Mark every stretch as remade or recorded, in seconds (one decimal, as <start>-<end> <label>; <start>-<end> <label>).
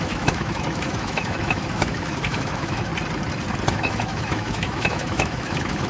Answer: 0.0-2.9 remade; 2.9-3.7 recorded; 3.7-5.9 remade